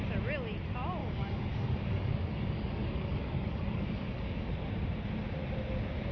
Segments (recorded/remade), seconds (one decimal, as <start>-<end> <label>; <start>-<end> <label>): 0.0-1.0 recorded; 1.0-4.5 remade; 4.5-6.1 recorded